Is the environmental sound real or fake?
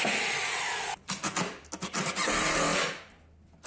real